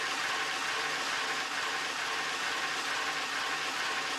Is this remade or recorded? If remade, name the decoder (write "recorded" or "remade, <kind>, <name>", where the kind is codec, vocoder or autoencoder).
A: recorded